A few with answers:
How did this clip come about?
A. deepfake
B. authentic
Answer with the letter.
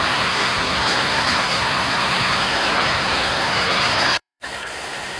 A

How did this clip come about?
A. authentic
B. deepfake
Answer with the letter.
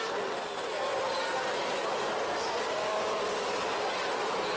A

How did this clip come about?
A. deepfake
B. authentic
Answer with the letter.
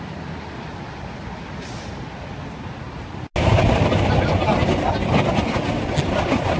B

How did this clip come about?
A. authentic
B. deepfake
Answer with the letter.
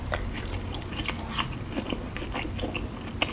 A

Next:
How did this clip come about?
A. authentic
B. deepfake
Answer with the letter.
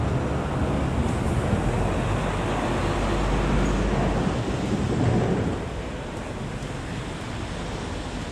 A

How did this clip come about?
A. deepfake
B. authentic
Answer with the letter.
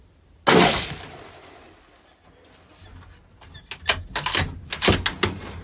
B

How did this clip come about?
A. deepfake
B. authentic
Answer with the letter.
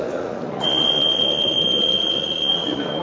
A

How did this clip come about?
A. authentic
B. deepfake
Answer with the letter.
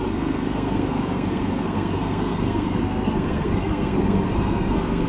B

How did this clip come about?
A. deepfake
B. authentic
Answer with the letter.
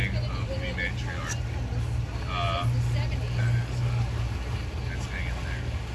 B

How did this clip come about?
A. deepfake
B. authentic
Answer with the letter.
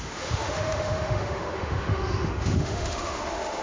A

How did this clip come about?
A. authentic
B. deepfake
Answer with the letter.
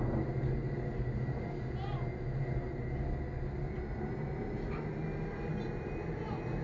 A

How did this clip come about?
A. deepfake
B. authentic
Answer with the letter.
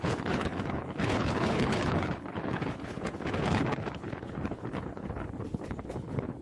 A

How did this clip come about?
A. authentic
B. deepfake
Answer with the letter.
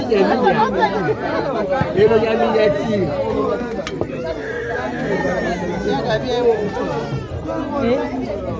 A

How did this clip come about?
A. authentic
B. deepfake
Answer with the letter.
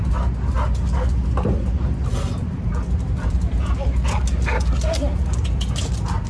A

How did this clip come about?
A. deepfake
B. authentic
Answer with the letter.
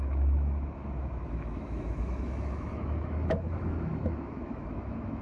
A